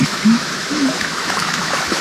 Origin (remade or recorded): remade